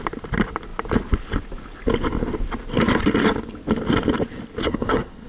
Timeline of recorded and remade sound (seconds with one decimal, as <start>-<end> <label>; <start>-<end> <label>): 0.0-4.6 recorded; 4.6-5.3 remade